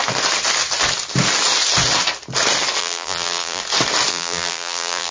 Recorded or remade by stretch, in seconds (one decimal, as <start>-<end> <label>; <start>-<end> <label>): 0.0-2.8 recorded; 2.8-3.6 remade; 3.6-4.1 recorded; 4.1-5.1 remade